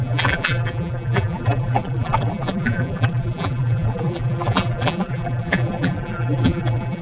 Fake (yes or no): yes